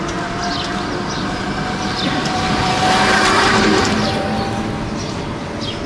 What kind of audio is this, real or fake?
real